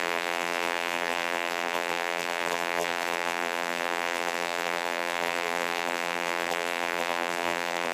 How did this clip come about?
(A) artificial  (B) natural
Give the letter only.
A